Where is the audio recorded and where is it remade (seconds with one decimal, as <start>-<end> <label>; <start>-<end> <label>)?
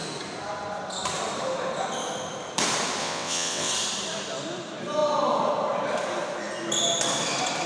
0.0-3.0 recorded; 3.0-3.7 remade; 3.7-7.7 recorded